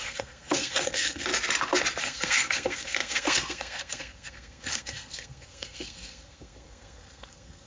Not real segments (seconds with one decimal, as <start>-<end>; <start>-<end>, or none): 0.0-1.3; 2.0-7.7